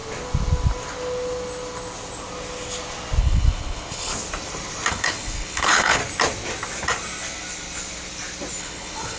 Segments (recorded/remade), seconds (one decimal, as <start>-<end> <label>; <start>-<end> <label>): 0.0-3.2 recorded; 3.2-4.1 remade; 4.1-4.9 recorded; 4.9-6.0 remade; 6.0-8.6 recorded; 8.6-9.2 remade